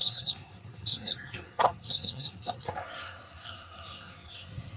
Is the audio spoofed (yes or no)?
yes